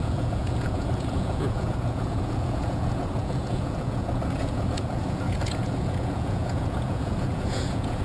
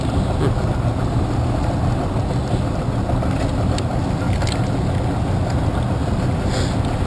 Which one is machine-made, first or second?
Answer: first